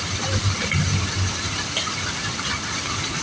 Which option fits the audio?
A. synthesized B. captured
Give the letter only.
A